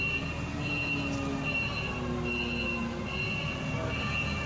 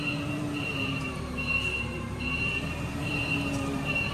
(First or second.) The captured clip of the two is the first